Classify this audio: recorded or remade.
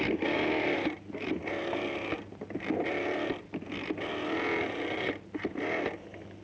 recorded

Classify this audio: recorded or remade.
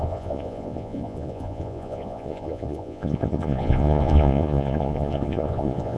remade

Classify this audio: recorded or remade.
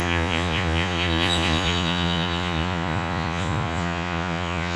remade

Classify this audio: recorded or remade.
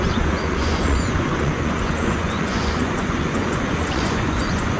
remade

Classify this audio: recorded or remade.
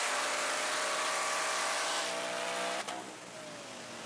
recorded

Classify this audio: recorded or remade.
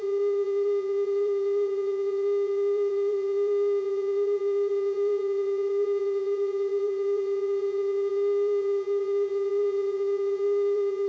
remade